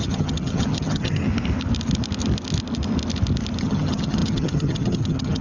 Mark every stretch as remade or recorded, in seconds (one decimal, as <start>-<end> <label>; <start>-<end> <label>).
0.0-1.3 remade; 1.3-3.6 recorded; 3.6-5.4 remade